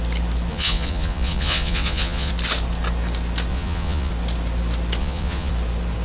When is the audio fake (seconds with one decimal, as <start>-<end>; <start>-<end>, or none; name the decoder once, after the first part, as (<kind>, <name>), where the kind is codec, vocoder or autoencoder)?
0.5-2.3 (vocoder, Vocos); 3.5-4.1; 5.0-5.5